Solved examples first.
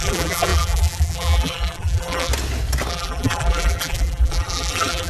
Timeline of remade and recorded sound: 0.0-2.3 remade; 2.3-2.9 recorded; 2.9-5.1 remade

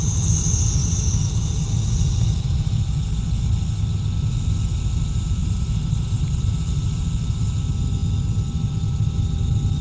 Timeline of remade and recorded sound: 0.0-0.8 recorded; 0.8-1.4 remade; 1.4-5.4 recorded; 5.4-6.6 remade; 6.6-9.8 recorded

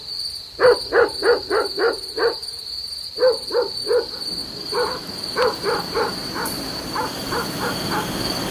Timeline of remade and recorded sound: 0.0-1.1 recorded; 1.1-3.1 remade; 3.1-6.2 recorded; 6.2-8.1 remade; 8.1-8.5 recorded

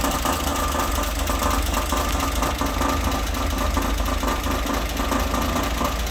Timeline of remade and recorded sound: 0.0-6.1 recorded

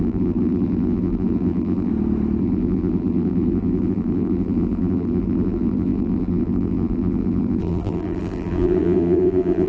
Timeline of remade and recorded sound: 0.0-1.9 remade; 1.9-2.4 recorded; 2.4-9.7 remade